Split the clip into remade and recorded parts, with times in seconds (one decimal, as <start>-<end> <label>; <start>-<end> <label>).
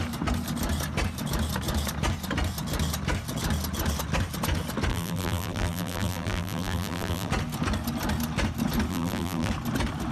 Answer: 0.0-4.9 recorded; 4.9-7.3 remade; 7.3-8.9 recorded; 8.9-9.5 remade; 9.5-10.1 recorded